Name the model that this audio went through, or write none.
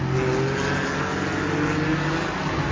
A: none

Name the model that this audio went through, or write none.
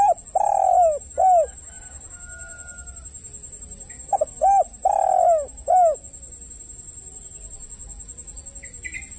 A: none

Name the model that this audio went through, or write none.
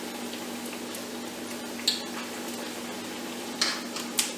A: none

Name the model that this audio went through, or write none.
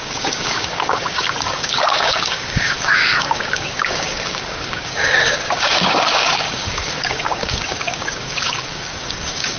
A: codec, DAC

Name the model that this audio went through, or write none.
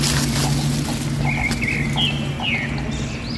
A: none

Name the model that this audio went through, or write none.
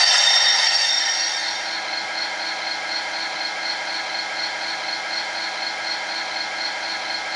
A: none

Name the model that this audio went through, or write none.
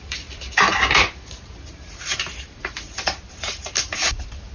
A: vocoder, BigVGAN v2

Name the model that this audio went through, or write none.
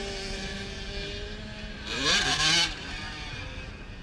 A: none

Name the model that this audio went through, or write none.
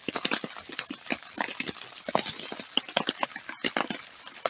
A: none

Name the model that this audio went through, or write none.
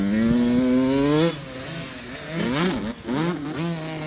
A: none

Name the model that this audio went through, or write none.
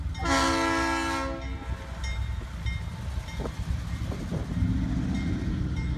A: none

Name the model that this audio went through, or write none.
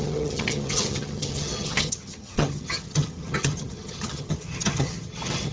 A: vocoder, HiFi-GAN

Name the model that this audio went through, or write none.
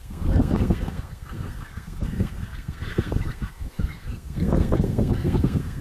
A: codec, SNAC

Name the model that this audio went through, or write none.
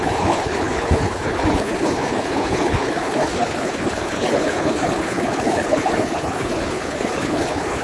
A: codec, HILCodec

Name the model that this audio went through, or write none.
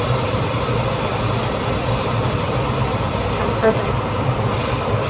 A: vocoder, BigVGAN v2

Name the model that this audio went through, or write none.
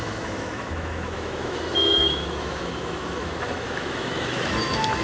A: autoencoder, DAC-VAE